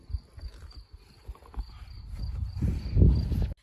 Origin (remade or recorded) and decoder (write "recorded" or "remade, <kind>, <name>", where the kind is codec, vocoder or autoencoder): recorded